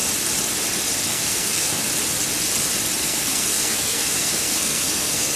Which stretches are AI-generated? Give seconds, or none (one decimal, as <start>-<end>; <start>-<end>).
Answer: 1.1-1.9; 3.0-5.4